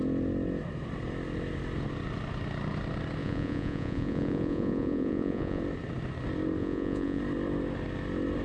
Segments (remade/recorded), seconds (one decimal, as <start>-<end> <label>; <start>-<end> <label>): 0.0-3.2 recorded; 3.2-5.6 remade; 5.6-6.6 recorded; 6.6-7.2 remade; 7.2-8.4 recorded